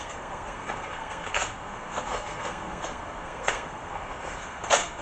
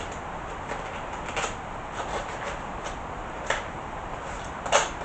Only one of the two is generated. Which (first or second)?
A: first